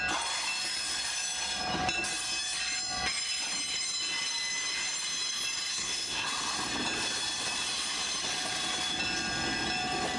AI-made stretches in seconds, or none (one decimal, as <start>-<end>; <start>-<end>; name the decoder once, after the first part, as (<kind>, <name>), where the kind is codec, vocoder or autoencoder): 5.7-6.3 (codec, SNAC)